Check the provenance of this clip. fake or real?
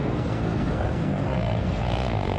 fake